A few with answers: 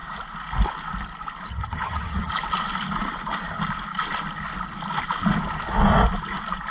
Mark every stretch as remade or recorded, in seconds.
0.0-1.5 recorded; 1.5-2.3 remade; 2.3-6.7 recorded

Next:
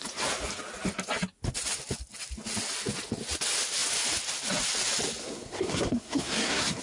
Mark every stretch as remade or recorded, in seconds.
0.0-5.2 recorded; 5.2-6.8 remade

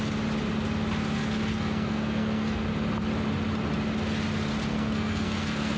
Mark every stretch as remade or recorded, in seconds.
0.0-1.5 recorded; 1.5-2.6 remade; 2.6-4.7 recorded; 4.7-5.8 remade

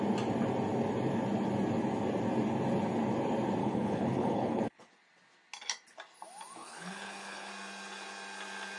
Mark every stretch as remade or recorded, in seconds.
0.0-3.6 recorded; 3.6-4.9 remade; 4.9-6.6 recorded; 6.6-7.5 remade; 7.5-8.8 recorded

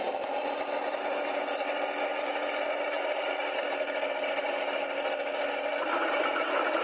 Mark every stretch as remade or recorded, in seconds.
0.0-6.8 recorded

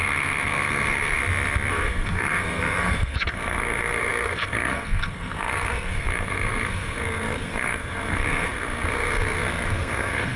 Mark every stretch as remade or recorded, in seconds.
0.0-1.2 remade; 1.2-1.7 recorded; 1.7-10.4 remade

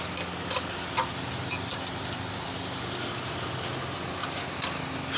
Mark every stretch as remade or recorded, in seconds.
0.0-5.2 recorded

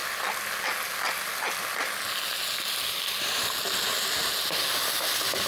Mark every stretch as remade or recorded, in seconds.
0.0-5.5 recorded